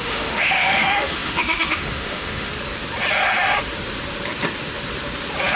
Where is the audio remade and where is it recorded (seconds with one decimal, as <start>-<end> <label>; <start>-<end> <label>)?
0.0-2.5 remade; 2.5-5.6 recorded